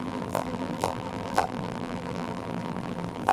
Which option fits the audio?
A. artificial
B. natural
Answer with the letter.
A